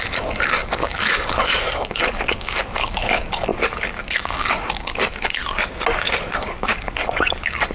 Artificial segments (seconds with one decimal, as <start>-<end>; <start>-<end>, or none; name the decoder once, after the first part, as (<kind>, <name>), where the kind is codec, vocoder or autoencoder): 0.0-5.4 (codec, DAC); 6.2-7.7